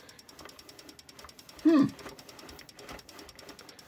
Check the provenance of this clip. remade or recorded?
recorded